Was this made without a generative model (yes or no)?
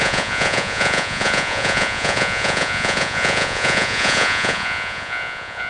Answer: no